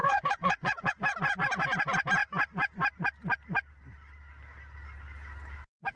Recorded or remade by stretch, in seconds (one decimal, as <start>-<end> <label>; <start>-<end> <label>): 0.0-0.9 remade; 0.9-6.0 recorded

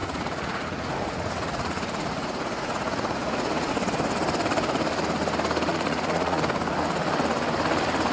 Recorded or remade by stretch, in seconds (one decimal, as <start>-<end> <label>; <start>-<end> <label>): 0.0-3.7 remade; 3.7-5.7 recorded; 5.7-6.4 remade; 6.4-8.1 recorded

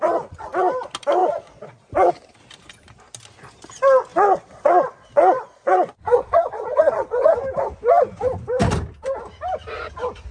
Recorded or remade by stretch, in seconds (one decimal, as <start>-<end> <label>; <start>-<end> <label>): 0.0-1.2 recorded; 1.2-2.1 remade; 2.1-4.1 recorded; 4.1-7.3 remade; 7.3-10.3 recorded

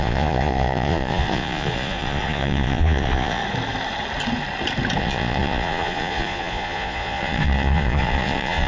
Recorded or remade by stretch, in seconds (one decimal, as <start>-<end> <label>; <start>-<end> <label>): 0.0-3.4 remade; 3.4-5.0 recorded; 5.0-8.7 remade